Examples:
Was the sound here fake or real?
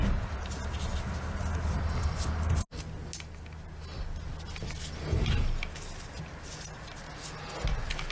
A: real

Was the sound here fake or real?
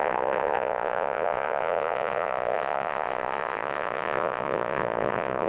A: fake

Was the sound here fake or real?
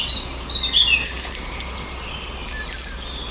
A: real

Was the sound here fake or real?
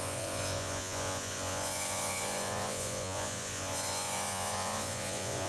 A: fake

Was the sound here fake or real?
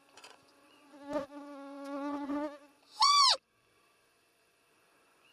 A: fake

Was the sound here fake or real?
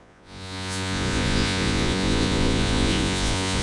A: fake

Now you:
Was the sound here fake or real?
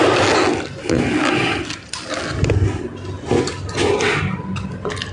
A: real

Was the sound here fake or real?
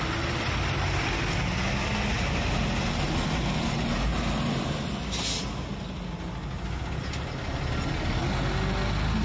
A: real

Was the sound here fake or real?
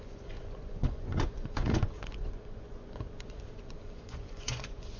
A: fake